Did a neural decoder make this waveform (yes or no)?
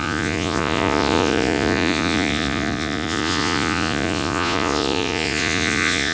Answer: yes